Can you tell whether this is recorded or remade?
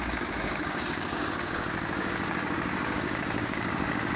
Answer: remade